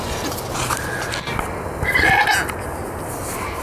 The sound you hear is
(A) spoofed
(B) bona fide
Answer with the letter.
B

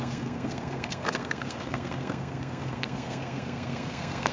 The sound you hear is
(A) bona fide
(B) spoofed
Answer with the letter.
B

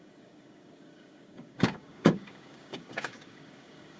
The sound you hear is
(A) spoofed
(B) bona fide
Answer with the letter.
A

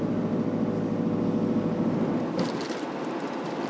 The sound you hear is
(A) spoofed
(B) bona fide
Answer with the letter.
B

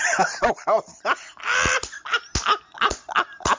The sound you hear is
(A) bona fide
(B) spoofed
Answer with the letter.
A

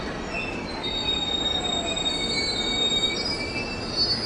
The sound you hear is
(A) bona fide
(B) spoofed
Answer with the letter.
A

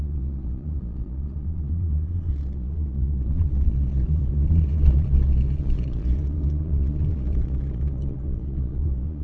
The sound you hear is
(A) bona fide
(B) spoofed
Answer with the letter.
B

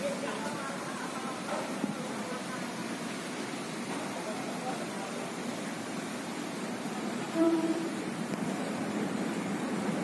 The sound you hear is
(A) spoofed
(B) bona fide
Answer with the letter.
A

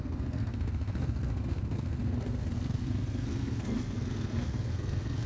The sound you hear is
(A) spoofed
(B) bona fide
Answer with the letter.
A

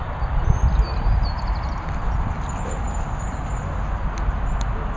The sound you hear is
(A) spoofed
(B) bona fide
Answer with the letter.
B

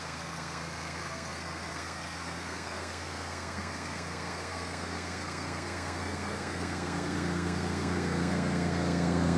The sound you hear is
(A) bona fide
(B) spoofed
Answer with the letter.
B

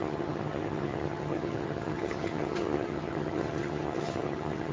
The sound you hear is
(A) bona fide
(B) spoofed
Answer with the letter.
B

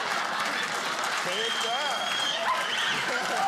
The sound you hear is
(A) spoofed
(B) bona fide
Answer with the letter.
B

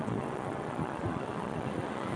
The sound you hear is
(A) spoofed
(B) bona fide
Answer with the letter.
A